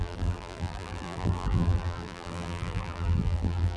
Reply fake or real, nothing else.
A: fake